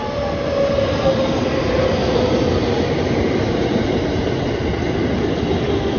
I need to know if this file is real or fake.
real